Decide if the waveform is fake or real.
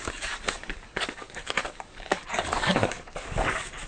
fake